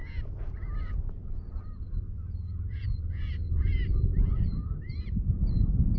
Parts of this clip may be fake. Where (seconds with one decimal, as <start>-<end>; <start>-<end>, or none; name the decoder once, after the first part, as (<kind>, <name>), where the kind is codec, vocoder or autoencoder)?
0.0-6.0 (vocoder, Vocos)